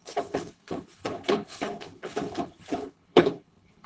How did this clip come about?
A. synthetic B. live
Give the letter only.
A